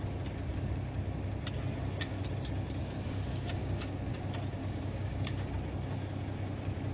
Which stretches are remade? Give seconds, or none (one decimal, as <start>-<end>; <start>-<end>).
2.8-4.1; 4.6-5.5